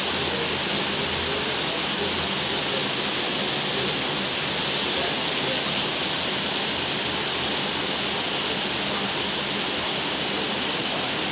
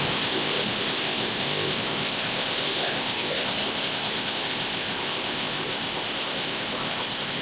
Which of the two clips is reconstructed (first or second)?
second